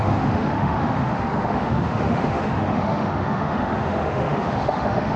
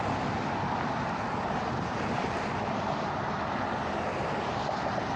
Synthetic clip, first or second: first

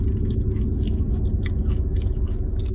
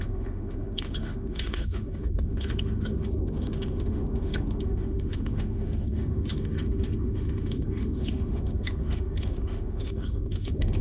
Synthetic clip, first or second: second